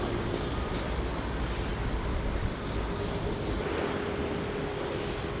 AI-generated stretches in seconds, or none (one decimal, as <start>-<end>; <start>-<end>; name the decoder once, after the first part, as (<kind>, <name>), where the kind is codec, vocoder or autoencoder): none